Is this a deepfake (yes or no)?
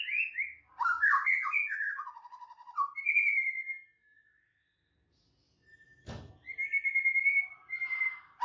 no